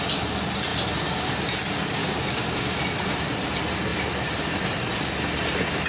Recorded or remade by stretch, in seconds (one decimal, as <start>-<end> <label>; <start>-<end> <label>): 0.0-2.0 recorded; 2.0-2.8 remade; 2.8-5.9 recorded